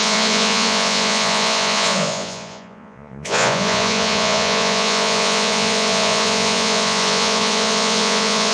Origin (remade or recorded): remade